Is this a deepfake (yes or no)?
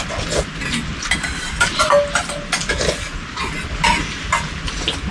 no